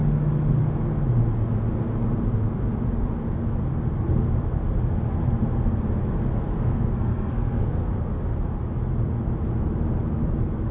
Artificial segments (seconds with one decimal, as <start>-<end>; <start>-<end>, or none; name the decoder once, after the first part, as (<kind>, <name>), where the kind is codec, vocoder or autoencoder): 6.3-7.9 (codec, SNAC)